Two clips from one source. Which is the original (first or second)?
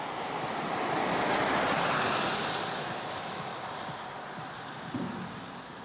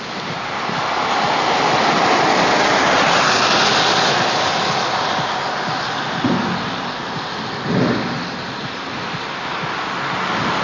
second